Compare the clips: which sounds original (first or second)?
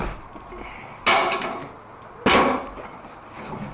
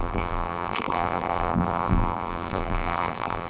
first